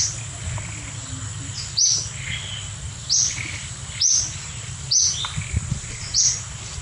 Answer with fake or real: real